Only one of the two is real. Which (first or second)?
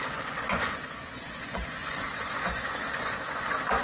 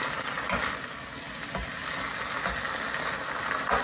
second